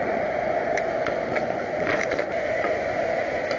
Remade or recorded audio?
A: remade